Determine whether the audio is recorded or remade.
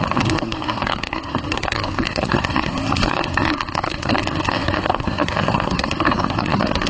remade